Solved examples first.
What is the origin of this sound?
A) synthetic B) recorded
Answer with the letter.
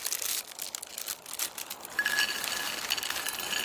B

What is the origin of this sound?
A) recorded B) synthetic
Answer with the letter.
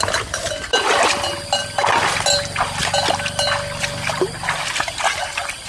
A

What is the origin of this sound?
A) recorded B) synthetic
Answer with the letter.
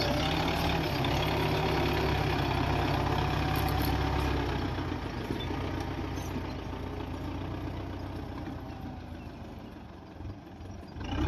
A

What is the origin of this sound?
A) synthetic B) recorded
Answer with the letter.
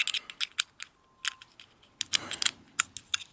B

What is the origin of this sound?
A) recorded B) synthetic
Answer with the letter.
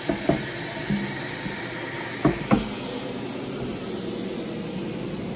A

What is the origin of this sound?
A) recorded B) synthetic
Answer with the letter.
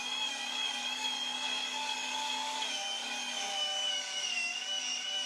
B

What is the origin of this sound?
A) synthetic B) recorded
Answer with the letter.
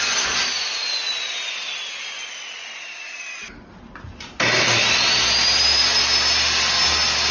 B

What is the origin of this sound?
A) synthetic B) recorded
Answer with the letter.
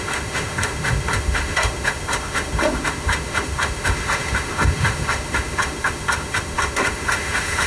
A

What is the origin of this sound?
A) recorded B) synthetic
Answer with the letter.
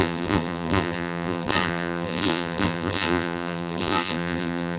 B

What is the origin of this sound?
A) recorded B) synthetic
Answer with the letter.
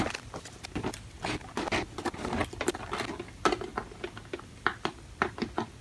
A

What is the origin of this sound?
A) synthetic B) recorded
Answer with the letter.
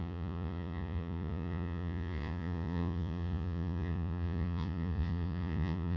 A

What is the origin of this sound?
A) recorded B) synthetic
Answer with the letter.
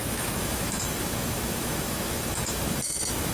B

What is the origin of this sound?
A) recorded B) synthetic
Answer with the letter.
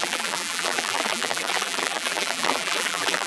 B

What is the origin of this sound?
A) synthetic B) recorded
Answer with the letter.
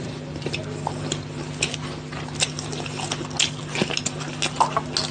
B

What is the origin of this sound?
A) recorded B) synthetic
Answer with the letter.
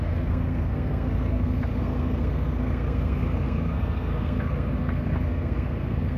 B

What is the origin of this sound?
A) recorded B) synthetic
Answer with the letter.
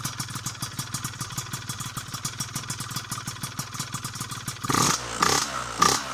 A